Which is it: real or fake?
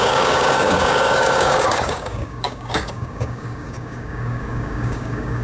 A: fake